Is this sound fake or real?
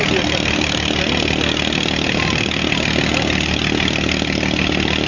real